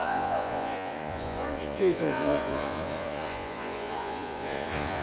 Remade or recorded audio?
remade